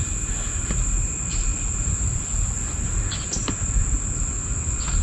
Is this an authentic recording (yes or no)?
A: yes